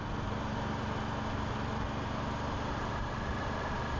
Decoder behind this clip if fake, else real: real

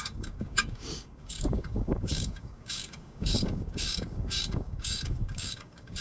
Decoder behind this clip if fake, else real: fake, codec, DAC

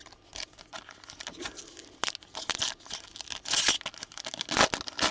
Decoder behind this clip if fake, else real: real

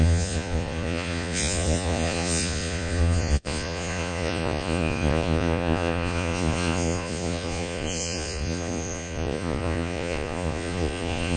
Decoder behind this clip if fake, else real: fake, vocoder, Vocos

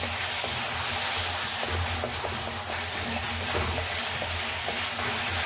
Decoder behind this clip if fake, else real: real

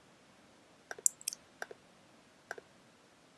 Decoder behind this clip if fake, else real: real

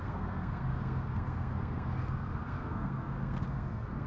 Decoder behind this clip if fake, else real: fake, codec, SNAC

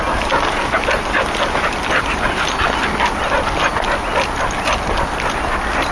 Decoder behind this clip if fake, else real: real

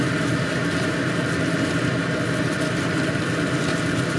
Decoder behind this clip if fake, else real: real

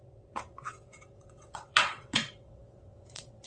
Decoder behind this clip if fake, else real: fake, vocoder, WaveNeXt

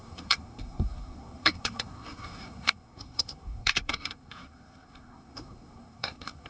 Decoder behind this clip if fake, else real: fake, codec, SNAC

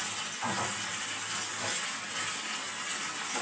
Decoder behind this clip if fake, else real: real